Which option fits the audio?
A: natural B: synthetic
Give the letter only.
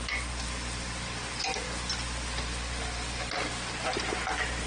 A